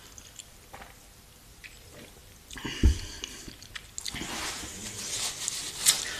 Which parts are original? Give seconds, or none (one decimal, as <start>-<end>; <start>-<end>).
0.0-6.2